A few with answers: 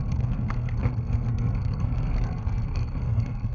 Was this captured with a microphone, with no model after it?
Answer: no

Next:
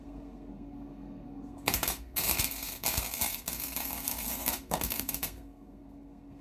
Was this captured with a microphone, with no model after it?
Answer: no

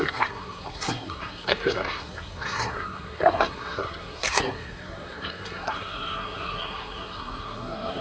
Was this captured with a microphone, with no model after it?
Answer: no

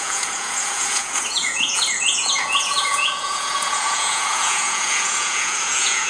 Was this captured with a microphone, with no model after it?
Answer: no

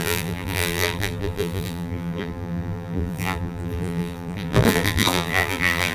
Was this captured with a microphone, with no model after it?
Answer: no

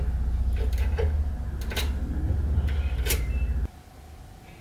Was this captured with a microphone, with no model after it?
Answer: yes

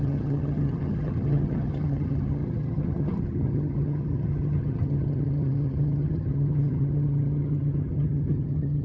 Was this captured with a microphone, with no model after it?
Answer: no